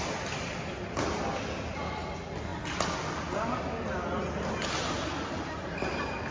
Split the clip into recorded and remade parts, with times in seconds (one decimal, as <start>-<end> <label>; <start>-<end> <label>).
0.0-6.3 recorded